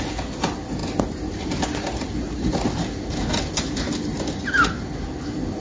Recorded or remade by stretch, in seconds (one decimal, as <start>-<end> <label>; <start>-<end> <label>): 0.0-5.6 recorded